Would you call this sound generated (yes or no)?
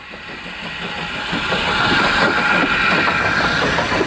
no